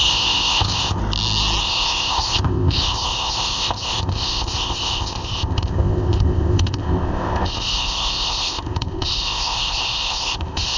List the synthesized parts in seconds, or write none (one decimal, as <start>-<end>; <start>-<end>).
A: 0.0-1.0; 1.6-10.8